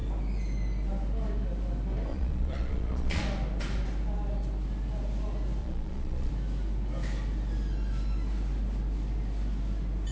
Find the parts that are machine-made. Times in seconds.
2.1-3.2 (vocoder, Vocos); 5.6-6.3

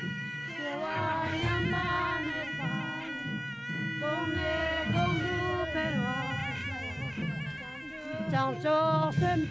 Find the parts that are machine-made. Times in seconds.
0.0-1.5 (codec, DAC); 4.6-5.4

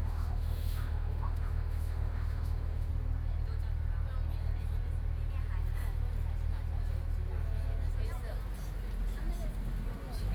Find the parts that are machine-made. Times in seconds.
0.0-2.9 (autoencoder, DAC-VAE)

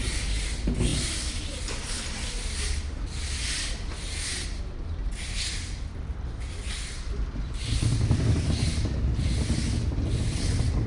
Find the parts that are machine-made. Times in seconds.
none

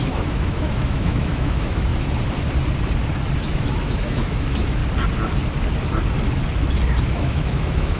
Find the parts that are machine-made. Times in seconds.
0.0-1.9 (autoencoder, DAC-VAE); 3.4-4.8; 7.0-8.0

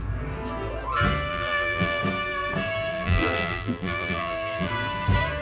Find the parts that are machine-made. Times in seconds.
1.3-2.0 (vocoder, BigVGAN v2); 2.9-4.7